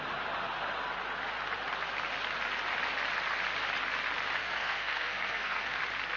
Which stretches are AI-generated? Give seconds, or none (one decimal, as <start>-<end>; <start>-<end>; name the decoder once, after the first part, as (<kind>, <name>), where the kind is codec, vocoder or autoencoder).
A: 4.4-5.8 (codec, SNAC)